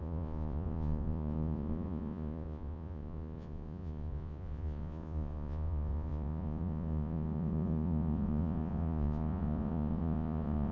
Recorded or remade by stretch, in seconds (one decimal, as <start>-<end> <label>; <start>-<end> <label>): 0.0-10.7 remade